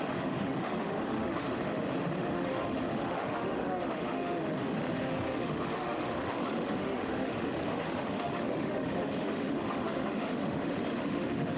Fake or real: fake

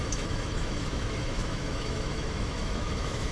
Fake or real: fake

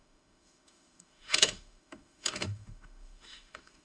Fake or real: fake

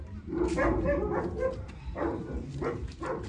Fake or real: real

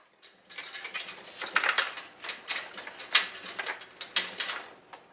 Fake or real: real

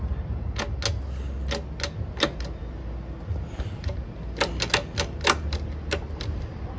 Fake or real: real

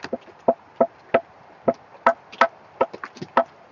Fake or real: real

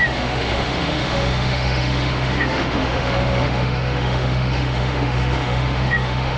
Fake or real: fake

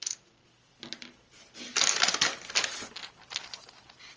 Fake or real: real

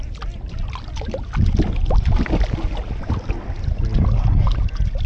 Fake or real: real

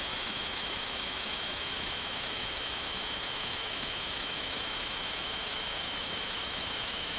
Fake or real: fake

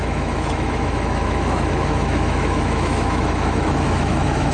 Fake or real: fake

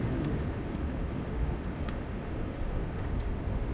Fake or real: fake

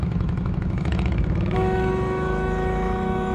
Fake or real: fake